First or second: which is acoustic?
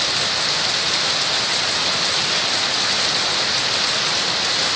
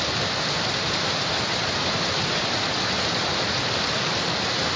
first